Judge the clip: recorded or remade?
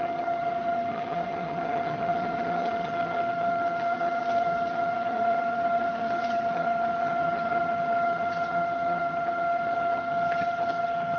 remade